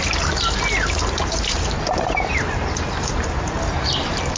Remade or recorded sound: remade